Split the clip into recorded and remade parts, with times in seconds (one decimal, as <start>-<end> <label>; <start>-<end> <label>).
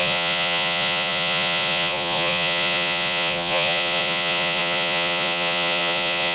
0.0-6.3 remade